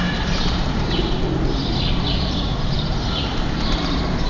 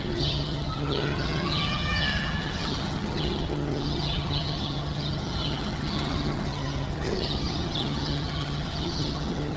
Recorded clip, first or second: first